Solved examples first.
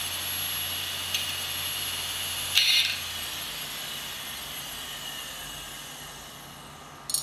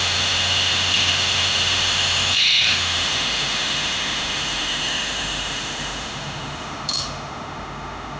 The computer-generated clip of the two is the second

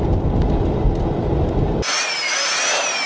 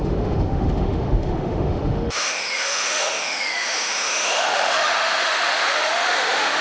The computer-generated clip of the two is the second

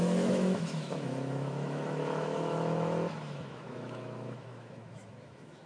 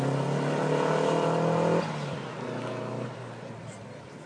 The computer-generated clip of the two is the first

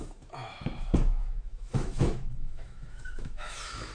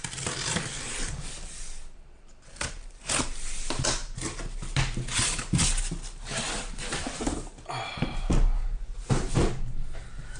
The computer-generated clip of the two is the first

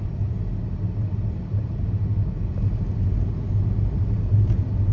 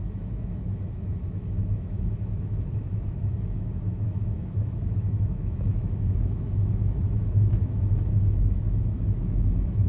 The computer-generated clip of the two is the second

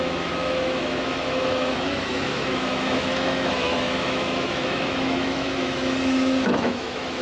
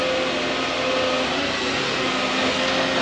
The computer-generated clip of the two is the first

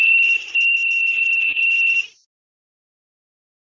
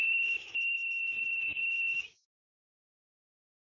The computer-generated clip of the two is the second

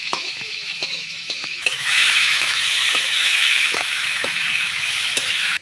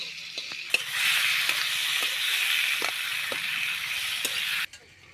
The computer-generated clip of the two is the first